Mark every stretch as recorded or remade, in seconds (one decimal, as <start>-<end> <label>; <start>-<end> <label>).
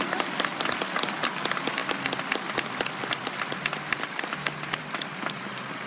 0.0-0.5 recorded; 0.5-1.2 remade; 1.2-1.8 recorded; 1.8-5.3 remade; 5.3-5.9 recorded